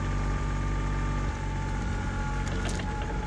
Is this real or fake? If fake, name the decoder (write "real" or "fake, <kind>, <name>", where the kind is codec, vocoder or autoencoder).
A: real